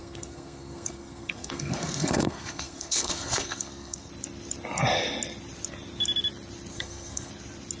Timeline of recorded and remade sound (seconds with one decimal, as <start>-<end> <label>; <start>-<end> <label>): 0.0-4.1 remade; 4.1-6.7 recorded; 6.7-7.3 remade; 7.3-7.8 recorded